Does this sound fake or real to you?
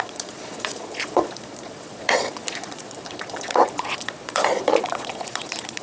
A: fake